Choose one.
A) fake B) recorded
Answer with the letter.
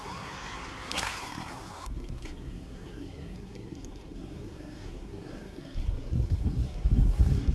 A